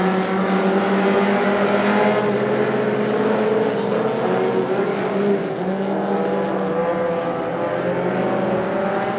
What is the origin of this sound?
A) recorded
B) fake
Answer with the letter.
A